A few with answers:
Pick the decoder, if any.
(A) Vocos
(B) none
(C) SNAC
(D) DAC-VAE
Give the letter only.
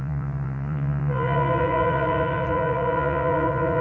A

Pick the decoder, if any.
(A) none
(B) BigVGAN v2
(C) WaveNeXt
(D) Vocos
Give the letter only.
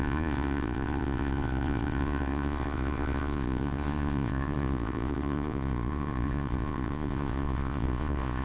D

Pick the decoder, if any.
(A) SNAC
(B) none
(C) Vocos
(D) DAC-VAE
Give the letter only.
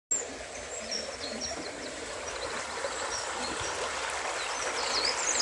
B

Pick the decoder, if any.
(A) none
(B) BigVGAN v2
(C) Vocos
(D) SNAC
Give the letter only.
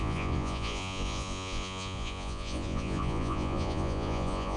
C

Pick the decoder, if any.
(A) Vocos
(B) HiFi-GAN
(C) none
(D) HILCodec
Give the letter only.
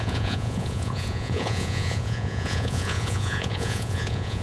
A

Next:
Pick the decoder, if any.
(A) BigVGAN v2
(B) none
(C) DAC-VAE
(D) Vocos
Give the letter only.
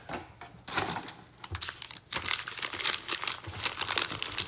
B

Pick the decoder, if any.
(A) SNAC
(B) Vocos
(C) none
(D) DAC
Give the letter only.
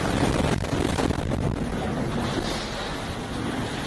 C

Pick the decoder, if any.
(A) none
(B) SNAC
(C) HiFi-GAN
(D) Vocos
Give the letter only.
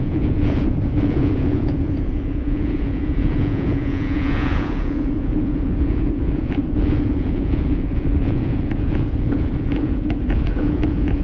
D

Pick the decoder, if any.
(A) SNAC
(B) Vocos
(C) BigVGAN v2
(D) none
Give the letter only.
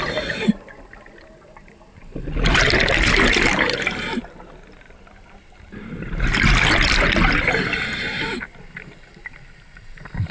D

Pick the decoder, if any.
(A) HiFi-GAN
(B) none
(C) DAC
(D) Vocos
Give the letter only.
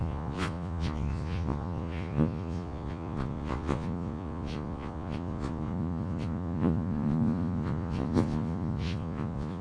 D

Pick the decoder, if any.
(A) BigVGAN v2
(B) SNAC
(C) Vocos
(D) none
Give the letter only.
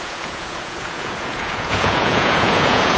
C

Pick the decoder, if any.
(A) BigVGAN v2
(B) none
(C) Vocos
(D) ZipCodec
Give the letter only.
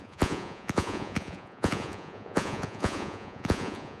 C